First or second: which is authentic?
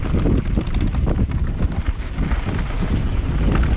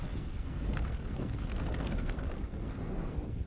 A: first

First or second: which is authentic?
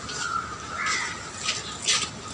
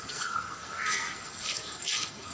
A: first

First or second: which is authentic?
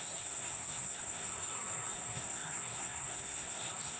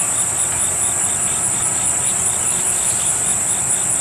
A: second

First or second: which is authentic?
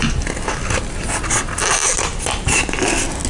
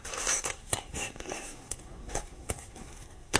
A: first